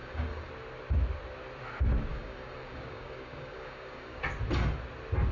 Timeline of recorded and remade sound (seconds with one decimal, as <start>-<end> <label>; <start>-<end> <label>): 0.0-0.5 remade; 0.5-2.1 recorded; 2.1-4.2 remade; 4.2-5.3 recorded